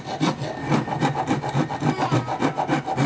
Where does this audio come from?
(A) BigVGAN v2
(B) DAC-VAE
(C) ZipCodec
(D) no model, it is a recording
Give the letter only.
D